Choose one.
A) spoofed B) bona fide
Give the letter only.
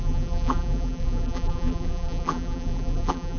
A